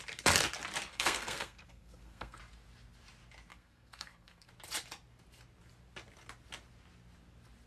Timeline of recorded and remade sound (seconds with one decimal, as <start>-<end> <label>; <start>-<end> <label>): 0.0-0.9 recorded; 0.9-2.4 remade; 2.4-3.5 recorded; 3.5-4.5 remade; 4.5-7.7 recorded